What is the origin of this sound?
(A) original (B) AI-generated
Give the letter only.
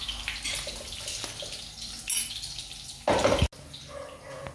A